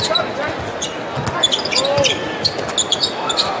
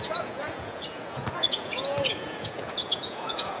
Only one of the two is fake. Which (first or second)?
second